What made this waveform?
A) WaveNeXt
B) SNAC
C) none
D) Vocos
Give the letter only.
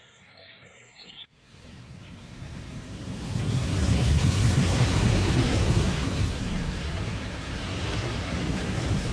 B